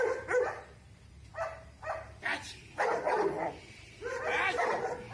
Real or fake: fake